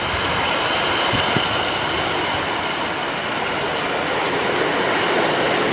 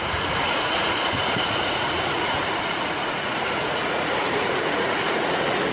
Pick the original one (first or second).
first